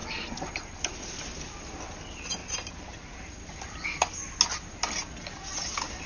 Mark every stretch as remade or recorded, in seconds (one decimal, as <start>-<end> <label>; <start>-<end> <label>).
0.0-2.4 recorded; 2.4-3.3 remade; 3.3-6.1 recorded

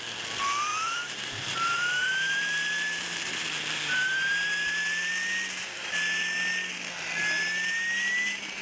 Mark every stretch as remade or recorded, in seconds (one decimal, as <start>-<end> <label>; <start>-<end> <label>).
0.0-0.7 recorded; 0.7-5.1 remade; 5.1-8.6 recorded

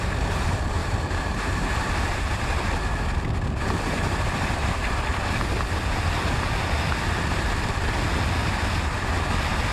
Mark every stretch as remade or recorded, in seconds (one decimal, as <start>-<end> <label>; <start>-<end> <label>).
0.0-0.8 recorded; 0.8-2.4 remade; 2.4-9.7 recorded

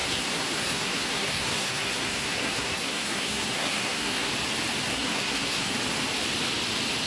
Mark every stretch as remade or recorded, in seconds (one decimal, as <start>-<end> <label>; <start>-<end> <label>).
0.0-4.3 remade; 4.3-4.9 recorded; 4.9-5.7 remade; 5.7-7.1 recorded

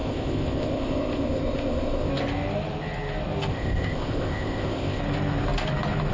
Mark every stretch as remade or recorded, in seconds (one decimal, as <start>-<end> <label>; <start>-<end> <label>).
0.0-2.1 remade; 2.1-3.5 recorded; 3.5-5.0 remade; 5.0-6.1 recorded